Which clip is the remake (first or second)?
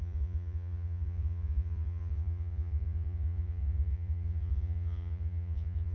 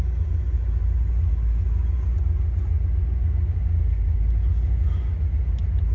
first